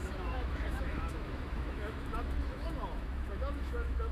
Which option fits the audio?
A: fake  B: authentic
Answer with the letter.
A